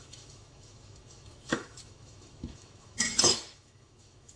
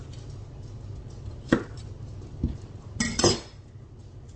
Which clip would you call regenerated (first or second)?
first